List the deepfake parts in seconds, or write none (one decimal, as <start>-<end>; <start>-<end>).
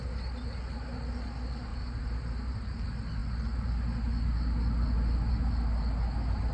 1.7-2.8